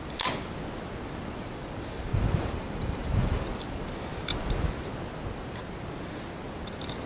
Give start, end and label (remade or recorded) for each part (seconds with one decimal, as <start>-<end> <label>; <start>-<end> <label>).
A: 0.0-2.1 recorded; 2.1-3.4 remade; 3.4-7.1 recorded